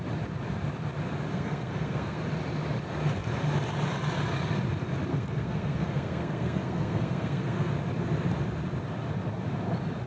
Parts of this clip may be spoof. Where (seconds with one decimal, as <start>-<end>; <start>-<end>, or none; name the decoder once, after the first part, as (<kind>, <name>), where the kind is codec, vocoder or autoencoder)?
1.3-2.2 (codec, SNAC); 5.1-7.7